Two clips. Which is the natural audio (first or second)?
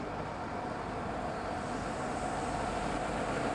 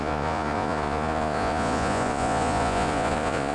first